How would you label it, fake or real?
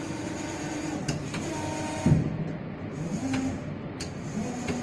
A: real